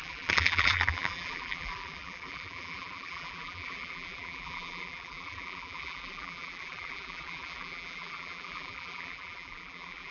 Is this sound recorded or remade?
remade